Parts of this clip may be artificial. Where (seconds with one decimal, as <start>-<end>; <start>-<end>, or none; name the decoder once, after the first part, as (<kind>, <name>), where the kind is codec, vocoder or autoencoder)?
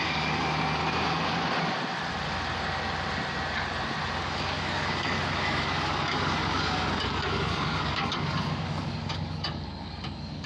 0.0-0.8 (codec, DAC); 4.2-10.5